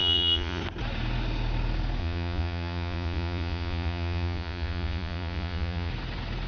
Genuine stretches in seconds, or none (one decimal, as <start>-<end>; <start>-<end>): 0.6-2.0; 5.9-6.5